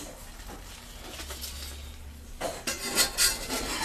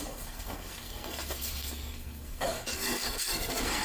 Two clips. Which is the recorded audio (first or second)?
first